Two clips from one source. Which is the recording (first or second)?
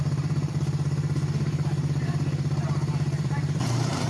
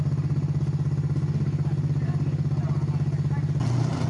second